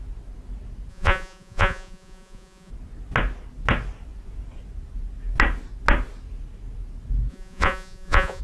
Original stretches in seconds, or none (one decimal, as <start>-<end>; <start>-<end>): 0.0-0.9; 2.7-7.3